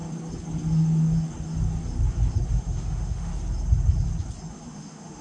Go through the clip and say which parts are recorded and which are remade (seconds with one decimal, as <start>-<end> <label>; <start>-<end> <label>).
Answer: 0.0-2.5 recorded; 2.5-3.3 remade; 3.3-4.5 recorded; 4.5-5.2 remade